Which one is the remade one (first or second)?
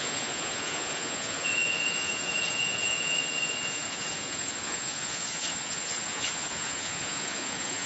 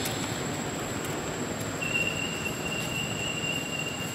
first